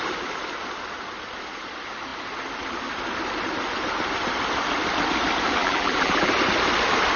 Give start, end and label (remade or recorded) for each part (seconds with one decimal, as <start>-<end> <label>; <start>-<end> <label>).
0.0-5.6 recorded; 5.6-6.3 remade; 6.3-7.2 recorded